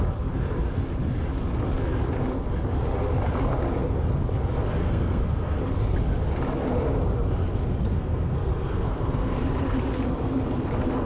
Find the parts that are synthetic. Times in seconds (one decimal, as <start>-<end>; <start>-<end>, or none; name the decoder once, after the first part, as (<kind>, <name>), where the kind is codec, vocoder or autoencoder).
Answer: 4.8-5.6 (codec, SNAC); 7.9-9.3